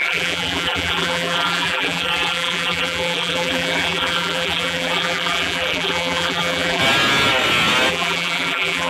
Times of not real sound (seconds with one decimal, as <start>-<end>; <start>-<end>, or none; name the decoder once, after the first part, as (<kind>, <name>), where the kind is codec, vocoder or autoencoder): 0.0-6.8 (vocoder, BigVGAN v2); 7.9-8.9

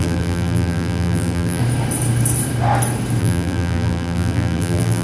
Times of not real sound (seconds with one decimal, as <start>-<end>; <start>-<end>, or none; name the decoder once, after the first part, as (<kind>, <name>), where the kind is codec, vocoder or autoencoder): 0.0-1.6 (vocoder, BigVGAN v2); 3.2-5.0

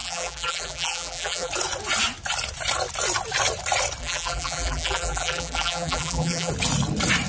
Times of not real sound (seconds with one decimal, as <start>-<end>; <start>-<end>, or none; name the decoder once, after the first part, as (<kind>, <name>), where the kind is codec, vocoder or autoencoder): 0.0-1.5 (vocoder, BigVGAN v2); 4.0-6.5

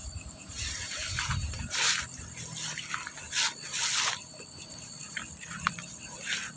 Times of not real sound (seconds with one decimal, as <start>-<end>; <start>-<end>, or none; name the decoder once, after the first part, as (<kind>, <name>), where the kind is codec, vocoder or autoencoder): 0.0-1.8 (vocoder, BigVGAN v2)